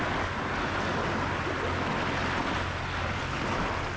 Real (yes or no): yes